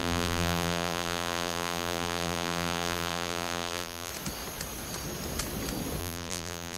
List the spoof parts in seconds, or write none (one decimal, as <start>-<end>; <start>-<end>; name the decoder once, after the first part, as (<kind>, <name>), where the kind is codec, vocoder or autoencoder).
0.0-4.1 (vocoder, BigVGAN v2); 6.0-6.8

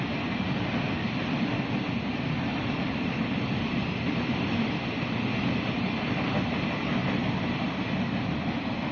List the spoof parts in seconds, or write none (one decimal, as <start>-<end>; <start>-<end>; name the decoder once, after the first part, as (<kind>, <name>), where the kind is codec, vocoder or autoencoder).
2.5-5.1 (vocoder, BigVGAN v2); 7.0-8.0

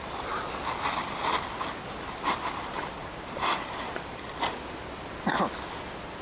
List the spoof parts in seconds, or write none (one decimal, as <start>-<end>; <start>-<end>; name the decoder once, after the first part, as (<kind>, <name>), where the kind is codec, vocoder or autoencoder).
3.0-4.0 (vocoder, BigVGAN v2)

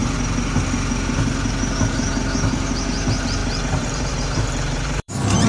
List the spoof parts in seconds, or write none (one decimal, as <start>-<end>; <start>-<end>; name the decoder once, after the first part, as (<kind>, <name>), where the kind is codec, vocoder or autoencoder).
3.4-5.1 (vocoder, BigVGAN v2)

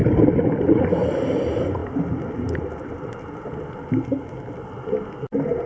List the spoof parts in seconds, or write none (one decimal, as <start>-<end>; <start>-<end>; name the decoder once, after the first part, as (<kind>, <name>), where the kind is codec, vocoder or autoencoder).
none

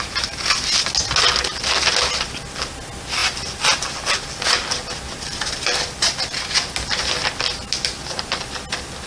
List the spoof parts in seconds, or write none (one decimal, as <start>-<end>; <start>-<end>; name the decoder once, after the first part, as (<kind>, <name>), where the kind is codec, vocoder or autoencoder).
1.5-2.7 (vocoder, BigVGAN v2); 3.2-6.7

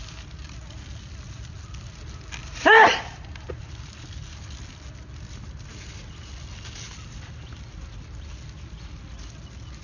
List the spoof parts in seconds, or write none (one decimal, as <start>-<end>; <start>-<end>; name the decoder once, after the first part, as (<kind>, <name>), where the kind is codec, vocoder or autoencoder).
2.4-3.7 (vocoder, BigVGAN v2)